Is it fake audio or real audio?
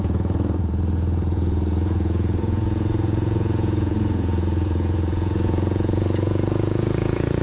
fake